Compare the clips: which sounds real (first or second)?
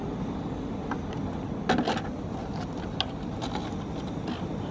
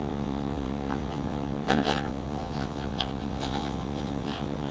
first